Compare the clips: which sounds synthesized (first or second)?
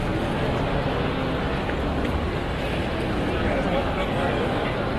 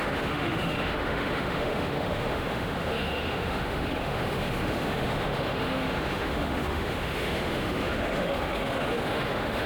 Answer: second